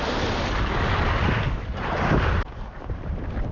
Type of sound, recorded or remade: recorded